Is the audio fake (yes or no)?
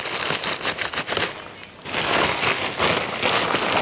no